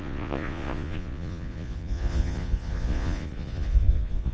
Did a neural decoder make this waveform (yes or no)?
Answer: yes